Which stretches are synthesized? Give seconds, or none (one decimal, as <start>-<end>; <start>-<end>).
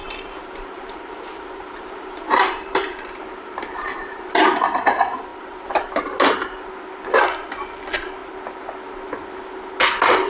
0.0-4.4; 5.3-5.9